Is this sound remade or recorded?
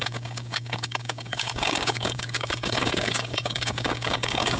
remade